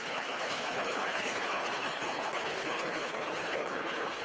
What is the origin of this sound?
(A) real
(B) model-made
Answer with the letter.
B